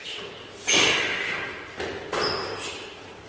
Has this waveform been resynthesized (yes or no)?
no